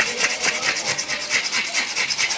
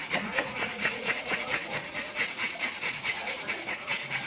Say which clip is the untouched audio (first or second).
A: first